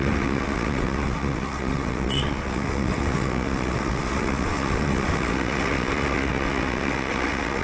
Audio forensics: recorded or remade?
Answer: remade